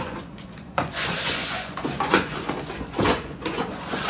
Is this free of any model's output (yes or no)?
no